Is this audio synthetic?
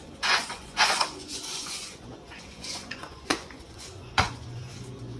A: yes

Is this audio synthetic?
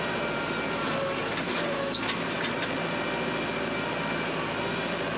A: no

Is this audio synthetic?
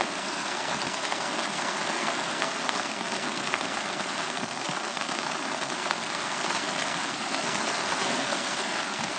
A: yes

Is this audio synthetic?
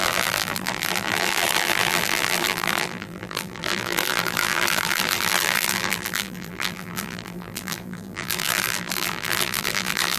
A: yes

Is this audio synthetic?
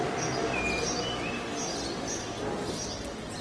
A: no